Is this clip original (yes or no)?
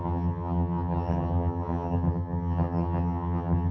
no